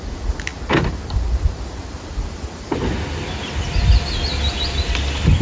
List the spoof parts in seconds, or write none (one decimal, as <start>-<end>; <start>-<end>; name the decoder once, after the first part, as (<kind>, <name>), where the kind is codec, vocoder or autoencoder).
none